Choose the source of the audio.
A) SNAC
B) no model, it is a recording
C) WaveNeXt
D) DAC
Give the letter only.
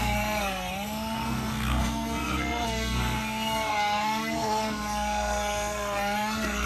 A